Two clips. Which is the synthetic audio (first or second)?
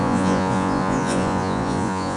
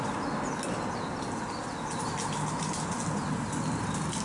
first